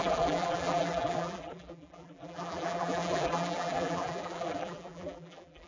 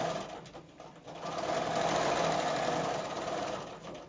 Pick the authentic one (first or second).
second